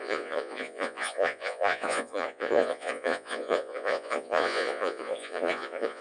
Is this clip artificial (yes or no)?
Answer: yes